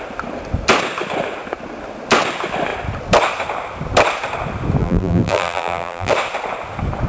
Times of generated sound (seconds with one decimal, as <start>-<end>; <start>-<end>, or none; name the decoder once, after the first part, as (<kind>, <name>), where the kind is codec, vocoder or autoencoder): 4.8-6.1 (vocoder, BigVGAN v2)